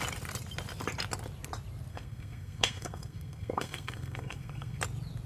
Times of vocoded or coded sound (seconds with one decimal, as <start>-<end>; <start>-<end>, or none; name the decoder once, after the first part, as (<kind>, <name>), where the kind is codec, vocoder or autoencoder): 1.9-4.8 (codec, SNAC)